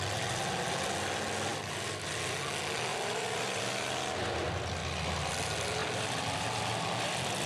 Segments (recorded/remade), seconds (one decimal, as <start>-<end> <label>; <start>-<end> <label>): 0.0-1.5 recorded; 1.5-2.2 remade; 2.2-2.9 recorded; 2.9-3.6 remade; 3.6-5.8 recorded; 5.8-6.4 remade; 6.4-7.5 recorded